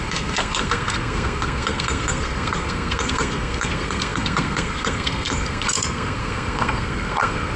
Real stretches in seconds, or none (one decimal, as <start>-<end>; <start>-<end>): none